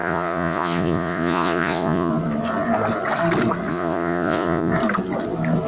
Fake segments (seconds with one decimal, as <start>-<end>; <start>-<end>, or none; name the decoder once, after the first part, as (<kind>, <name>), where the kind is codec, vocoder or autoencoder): 0.0-2.1 (vocoder, Vocos); 3.7-4.7